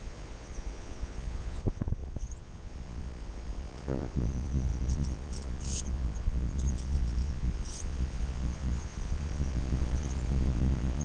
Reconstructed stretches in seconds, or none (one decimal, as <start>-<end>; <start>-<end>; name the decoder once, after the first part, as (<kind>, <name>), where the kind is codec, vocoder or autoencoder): 0.0-11.0 (vocoder, Vocos)